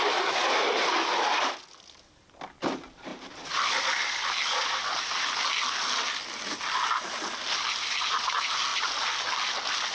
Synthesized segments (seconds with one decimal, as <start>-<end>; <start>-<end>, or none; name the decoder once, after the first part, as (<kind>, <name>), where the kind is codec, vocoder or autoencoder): 3.1-4.8 (vocoder, BigVGAN v2); 8.7-9.3